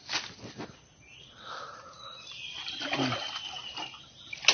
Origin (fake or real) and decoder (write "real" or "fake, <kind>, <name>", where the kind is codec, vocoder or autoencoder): real